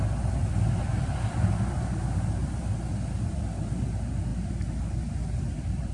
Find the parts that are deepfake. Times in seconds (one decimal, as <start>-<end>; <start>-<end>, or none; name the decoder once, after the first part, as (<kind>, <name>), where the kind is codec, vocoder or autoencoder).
0.0-5.9 (vocoder, BigVGAN v2)